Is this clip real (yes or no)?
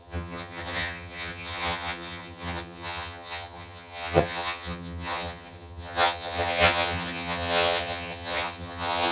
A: no